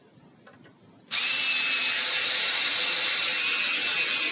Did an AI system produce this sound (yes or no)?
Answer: no